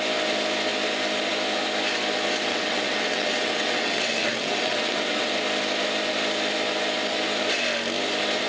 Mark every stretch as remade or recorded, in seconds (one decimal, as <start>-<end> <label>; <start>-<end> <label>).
0.0-2.5 recorded; 2.5-5.3 remade; 5.3-8.5 recorded

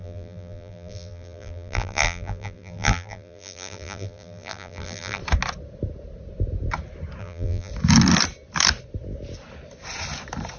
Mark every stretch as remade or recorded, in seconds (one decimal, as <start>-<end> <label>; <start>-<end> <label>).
0.0-5.2 remade; 5.2-7.2 recorded; 7.2-7.7 remade; 7.7-10.6 recorded

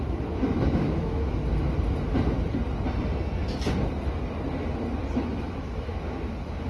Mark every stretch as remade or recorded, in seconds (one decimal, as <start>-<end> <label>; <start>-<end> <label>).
0.0-1.4 remade; 1.4-5.0 recorded; 5.0-6.7 remade

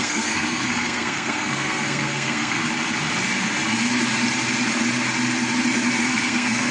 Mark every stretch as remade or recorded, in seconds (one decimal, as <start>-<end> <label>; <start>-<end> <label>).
0.0-2.6 remade; 2.6-6.0 recorded; 6.0-6.7 remade

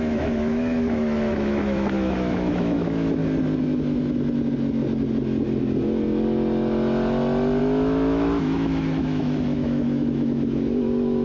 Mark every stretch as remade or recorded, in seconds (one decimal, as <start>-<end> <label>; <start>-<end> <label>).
0.0-3.2 remade; 3.2-7.6 recorded; 7.6-11.2 remade

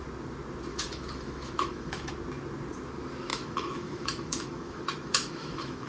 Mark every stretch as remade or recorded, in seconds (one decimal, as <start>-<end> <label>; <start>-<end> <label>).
0.0-0.7 recorded; 0.7-2.1 remade; 2.1-3.3 recorded; 3.3-5.9 remade

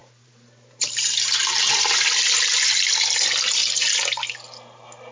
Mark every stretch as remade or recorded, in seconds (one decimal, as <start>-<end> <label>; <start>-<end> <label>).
0.0-1.3 remade; 1.3-5.1 recorded

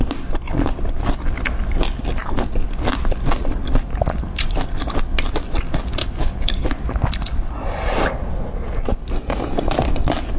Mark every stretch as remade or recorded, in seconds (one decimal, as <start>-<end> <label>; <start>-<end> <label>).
0.0-6.0 recorded; 6.0-6.8 remade; 6.8-10.4 recorded